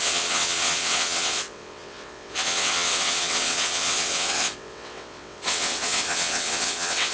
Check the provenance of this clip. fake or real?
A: fake